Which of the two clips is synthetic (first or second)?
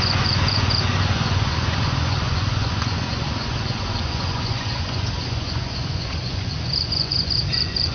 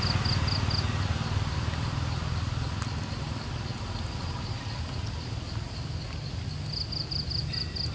first